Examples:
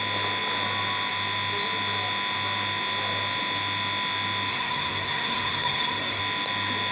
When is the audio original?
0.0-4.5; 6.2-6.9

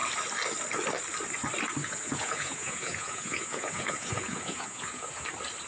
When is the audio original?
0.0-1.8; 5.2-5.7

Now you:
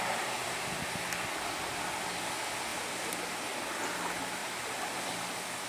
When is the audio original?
0.0-2.7; 3.7-4.4; 5.1-5.7

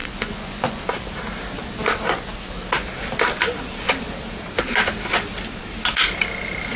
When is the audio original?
0.8-6.8